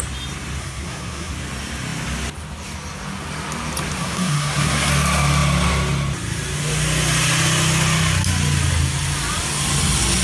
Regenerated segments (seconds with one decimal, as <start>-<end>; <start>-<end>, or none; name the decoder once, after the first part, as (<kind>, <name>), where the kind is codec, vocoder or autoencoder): 0.6-1.3 (codec, SNAC); 4.0-4.9